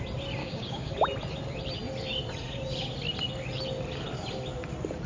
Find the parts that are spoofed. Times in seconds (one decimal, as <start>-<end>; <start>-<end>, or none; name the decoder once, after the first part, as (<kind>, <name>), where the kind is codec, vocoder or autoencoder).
0.4-0.9 (codec, DAC)